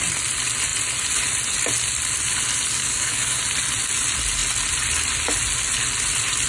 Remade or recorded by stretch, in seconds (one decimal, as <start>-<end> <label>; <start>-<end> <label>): 0.0-2.8 recorded; 2.8-3.4 remade; 3.4-6.5 recorded